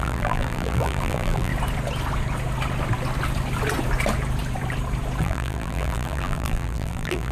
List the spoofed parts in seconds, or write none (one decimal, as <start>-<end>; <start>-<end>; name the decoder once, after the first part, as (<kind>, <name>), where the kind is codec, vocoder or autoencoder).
0.0-1.5 (vocoder, BigVGAN v2); 5.2-7.3